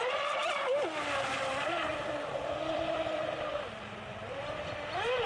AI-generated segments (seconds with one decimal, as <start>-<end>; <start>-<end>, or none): 1.9-3.5